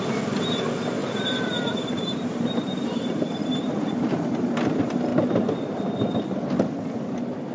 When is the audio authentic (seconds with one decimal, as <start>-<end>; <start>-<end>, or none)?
0.0-1.0; 4.2-7.5